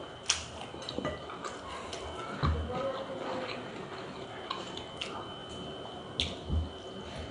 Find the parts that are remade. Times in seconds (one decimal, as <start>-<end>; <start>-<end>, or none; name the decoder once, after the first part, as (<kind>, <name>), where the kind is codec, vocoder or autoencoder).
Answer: none